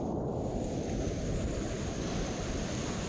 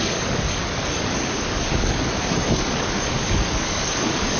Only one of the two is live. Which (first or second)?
first